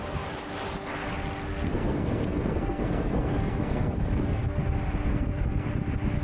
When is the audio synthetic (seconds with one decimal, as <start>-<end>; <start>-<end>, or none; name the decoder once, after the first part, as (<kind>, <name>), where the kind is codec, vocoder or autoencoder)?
1.5-4.6 (codec, SNAC); 5.1-5.7